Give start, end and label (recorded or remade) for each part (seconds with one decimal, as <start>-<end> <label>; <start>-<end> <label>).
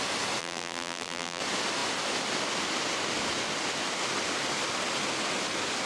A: 0.0-0.4 recorded; 0.4-1.4 remade; 1.4-5.9 recorded